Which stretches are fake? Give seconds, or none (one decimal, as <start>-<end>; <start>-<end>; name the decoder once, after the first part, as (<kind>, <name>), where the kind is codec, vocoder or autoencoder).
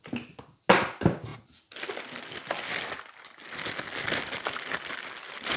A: none